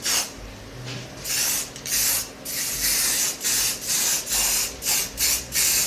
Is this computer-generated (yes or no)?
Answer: no